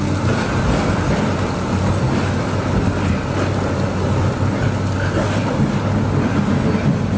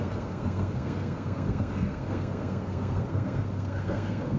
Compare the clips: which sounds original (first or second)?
first